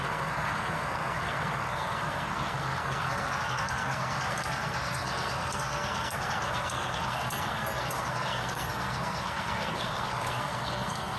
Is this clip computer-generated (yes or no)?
yes